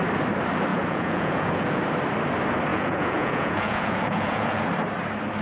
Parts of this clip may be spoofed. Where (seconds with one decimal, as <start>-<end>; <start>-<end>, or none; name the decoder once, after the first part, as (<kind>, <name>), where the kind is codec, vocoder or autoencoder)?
0.7-1.8 (vocoder, Vocos); 2.7-4.6